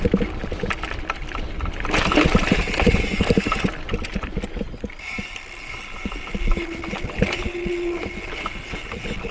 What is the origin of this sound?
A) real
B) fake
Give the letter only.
A